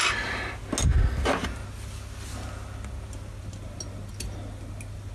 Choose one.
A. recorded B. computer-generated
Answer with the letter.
A